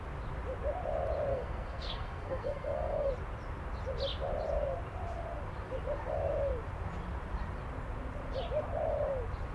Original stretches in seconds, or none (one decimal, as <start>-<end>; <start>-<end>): 0.0-1.3; 3.1-9.5

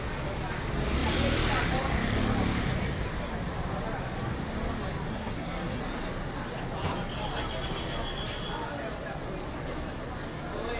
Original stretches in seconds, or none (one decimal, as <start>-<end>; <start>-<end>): 0.0-5.1; 5.8-10.8

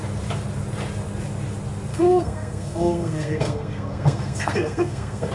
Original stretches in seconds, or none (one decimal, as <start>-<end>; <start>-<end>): 0.0-1.9

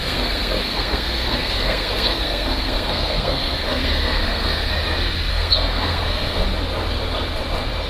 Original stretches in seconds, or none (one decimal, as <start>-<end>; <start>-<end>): 4.7-5.3; 6.4-7.9

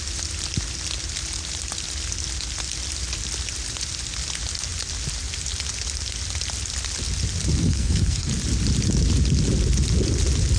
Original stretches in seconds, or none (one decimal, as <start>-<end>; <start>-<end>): 0.0-7.5; 8.3-10.6